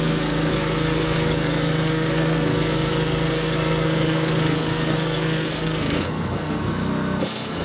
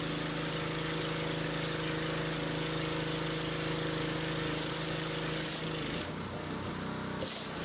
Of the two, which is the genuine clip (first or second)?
second